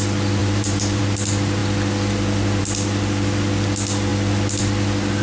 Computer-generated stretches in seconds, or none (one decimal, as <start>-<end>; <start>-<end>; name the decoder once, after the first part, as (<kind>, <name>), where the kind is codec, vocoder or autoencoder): 0.4-1.0 (vocoder, BigVGAN v2)